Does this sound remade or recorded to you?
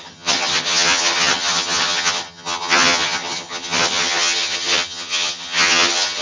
remade